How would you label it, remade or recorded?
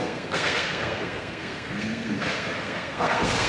remade